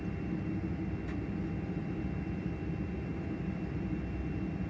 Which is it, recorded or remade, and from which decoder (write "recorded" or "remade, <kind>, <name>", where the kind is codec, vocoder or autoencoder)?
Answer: recorded